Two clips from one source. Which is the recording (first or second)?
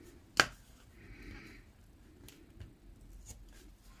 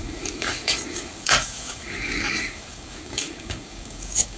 first